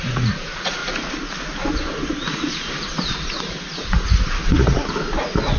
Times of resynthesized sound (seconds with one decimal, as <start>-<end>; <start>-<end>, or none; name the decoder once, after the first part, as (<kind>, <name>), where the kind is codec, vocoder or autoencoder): 0.0-0.8 (vocoder, Vocos); 1.7-5.6